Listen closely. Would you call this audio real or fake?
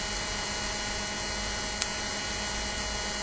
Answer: real